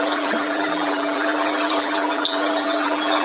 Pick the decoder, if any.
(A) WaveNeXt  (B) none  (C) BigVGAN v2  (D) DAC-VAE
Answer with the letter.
C